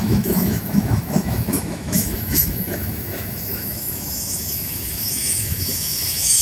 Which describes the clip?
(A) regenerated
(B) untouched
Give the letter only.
A